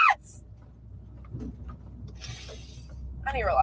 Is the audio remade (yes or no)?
no